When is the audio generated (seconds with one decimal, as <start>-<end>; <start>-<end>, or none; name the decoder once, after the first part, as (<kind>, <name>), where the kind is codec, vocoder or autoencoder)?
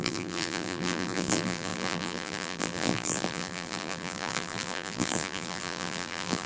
0.0-6.5 (vocoder, BigVGAN v2)